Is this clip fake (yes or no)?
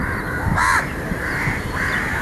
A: yes